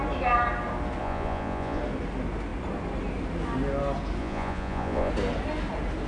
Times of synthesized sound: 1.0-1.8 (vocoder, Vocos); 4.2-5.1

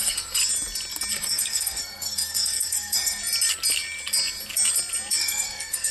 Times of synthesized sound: 0.0-0.4 (codec, SNAC); 1.1-3.2; 5.1-5.9